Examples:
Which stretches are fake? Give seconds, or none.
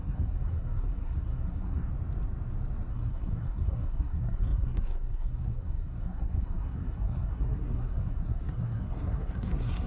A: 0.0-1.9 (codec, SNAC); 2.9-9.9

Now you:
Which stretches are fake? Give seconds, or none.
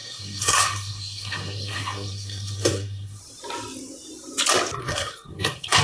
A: 0.0-3.2 (codec, SNAC); 4.8-5.8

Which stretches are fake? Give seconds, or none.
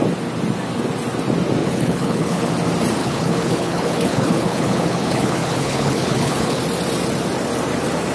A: 1.6-2.5 (codec, HILCodec); 3.0-6.6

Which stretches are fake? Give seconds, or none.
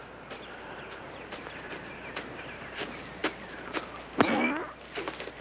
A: none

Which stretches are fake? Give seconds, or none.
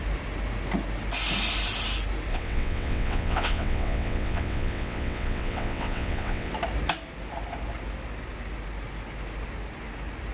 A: 2.3-6.5 (vocoder, WaveNeXt)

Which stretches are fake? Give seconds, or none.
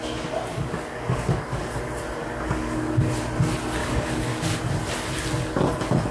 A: 0.5-1.6 (codec, DAC); 2.2-3.1; 3.8-4.6